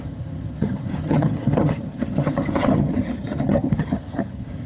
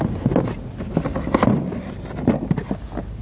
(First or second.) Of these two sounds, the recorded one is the second